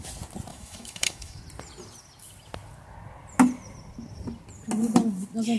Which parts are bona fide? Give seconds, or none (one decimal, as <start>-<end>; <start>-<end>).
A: 0.0-0.5; 1.4-5.6